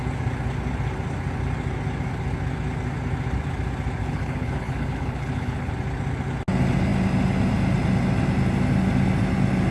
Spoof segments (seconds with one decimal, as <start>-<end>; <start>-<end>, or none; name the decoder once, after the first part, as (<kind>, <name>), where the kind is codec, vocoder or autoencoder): 4.0-5.7 (codec, HILCodec)

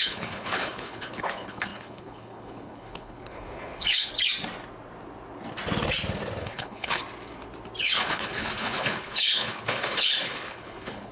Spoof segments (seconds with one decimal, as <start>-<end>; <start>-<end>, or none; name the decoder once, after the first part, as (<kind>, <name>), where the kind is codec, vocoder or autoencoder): 0.0-4.1 (codec, HILCodec); 6.4-7.0; 7.8-11.1

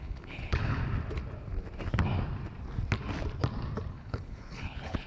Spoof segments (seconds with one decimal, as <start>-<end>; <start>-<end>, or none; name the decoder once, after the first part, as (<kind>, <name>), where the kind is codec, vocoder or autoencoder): 0.0-0.8 (codec, HILCodec); 3.9-5.1

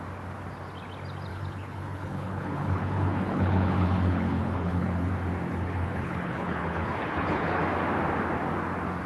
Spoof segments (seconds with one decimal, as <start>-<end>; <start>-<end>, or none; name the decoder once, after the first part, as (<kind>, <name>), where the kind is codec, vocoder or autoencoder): 1.3-5.1 (codec, HILCodec); 5.5-7.6

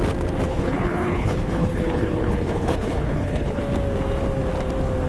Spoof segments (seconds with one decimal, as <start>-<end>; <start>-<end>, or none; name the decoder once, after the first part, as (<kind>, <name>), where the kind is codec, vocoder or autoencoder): 0.5-3.6 (codec, HILCodec)

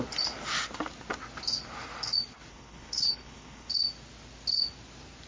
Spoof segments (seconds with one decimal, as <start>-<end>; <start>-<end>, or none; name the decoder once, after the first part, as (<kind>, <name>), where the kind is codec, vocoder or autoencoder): 2.5-3.7 (codec, HILCodec)

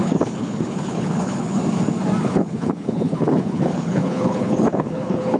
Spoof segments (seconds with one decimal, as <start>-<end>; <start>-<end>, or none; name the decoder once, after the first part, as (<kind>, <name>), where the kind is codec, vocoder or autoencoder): 0.0-1.6 (codec, HILCodec); 2.2-5.4